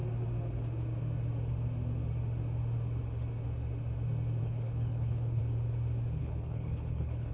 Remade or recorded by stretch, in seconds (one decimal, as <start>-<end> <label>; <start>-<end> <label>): 0.0-4.4 recorded; 4.4-5.4 remade; 5.4-6.2 recorded; 6.2-7.3 remade